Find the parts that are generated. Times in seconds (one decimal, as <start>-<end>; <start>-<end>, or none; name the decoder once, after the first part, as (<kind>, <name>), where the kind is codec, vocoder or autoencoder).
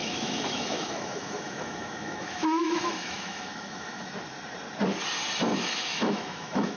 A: 0.0-4.1 (autoencoder, DAC-VAE); 5.5-6.8